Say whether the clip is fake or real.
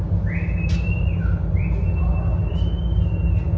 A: real